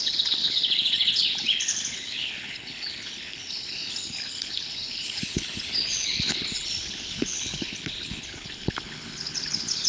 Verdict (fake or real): fake